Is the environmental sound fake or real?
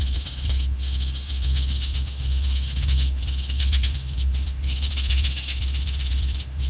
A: fake